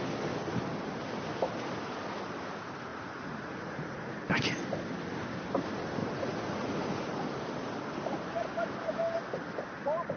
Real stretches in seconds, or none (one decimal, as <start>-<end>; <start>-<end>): 0.0-2.9; 4.1-6.0; 7.4-10.2